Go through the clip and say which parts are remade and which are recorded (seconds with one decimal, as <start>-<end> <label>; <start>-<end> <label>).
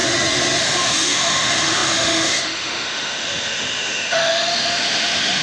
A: 0.0-0.6 recorded; 0.6-5.4 remade